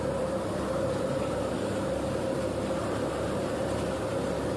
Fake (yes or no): no